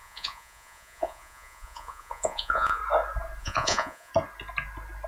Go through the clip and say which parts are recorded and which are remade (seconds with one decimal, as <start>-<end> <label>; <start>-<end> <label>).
0.0-2.8 remade; 2.8-3.4 recorded; 3.4-4.1 remade; 4.1-5.1 recorded